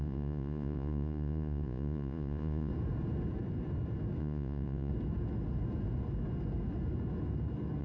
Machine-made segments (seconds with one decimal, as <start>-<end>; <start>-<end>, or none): 0.0-2.7; 4.2-4.9